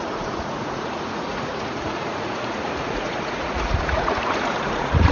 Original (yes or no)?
no